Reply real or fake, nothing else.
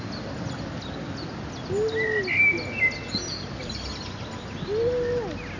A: real